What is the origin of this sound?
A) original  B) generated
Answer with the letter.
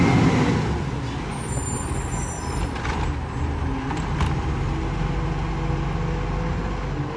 A